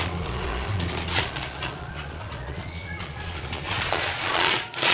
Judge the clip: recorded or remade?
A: remade